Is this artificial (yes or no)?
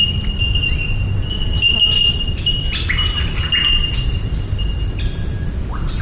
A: no